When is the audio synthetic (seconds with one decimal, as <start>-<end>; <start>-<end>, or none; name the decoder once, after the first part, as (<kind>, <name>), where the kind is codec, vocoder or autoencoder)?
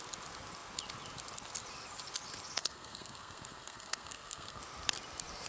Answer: 2.6-4.6 (codec, SNAC)